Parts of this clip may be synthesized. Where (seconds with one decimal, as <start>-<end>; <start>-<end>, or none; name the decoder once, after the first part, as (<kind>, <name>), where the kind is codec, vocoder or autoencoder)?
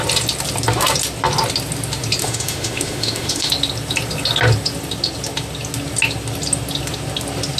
2.2-3.5 (autoencoder, DAC-VAE)